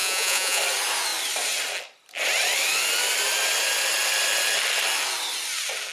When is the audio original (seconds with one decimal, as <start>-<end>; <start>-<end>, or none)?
0.6-5.9